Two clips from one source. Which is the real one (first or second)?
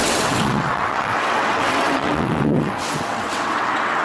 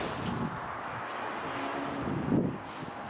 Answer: second